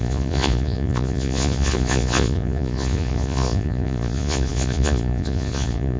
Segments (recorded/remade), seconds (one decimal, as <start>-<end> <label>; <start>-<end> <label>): 0.0-6.0 remade